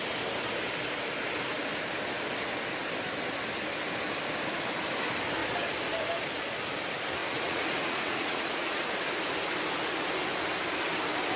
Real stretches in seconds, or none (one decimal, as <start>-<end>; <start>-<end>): 0.0-7.2; 8.8-11.4